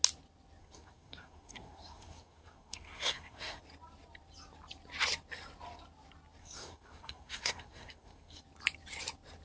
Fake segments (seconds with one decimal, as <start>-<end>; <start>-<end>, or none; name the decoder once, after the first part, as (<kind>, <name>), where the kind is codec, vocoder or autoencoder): 0.6-3.6 (codec, SNAC); 6.4-8.4